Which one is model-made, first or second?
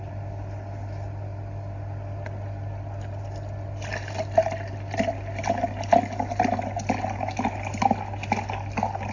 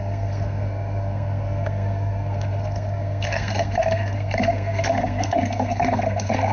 second